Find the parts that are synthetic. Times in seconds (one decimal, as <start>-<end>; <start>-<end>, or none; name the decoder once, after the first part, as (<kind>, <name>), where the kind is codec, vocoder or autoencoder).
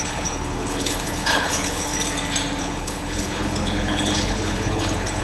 0.0-1.9 (codec, HILCodec); 2.6-5.2